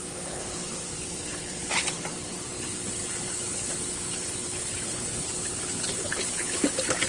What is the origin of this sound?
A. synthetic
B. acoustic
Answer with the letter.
A